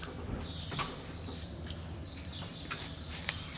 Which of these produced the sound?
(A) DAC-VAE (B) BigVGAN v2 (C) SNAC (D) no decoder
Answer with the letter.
D